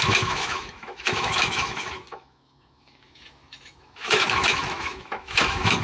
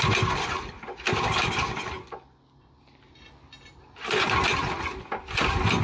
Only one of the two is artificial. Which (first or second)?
first